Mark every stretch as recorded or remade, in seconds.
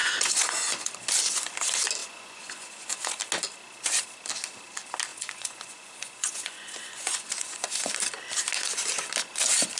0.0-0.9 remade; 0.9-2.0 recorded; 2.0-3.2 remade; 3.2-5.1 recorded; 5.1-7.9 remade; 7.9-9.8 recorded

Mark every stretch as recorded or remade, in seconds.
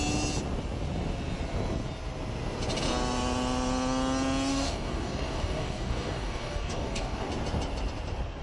0.0-4.5 recorded; 4.5-7.3 remade; 7.3-8.4 recorded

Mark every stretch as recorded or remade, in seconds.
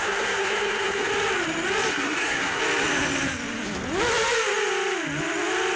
0.0-1.1 remade; 1.1-1.9 recorded; 1.9-2.6 remade; 2.6-5.8 recorded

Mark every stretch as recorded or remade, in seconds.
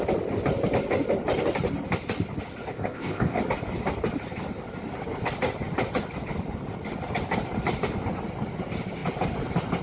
0.0-2.7 recorded; 2.7-3.4 remade; 3.4-9.8 recorded